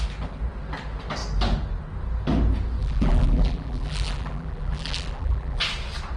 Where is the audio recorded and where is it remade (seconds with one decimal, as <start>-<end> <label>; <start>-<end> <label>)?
0.0-2.8 recorded; 2.8-5.6 remade; 5.6-6.2 recorded